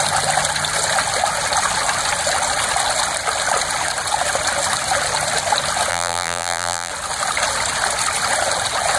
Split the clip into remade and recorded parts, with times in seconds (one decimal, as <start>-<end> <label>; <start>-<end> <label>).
0.0-5.9 recorded; 5.9-6.9 remade; 6.9-9.0 recorded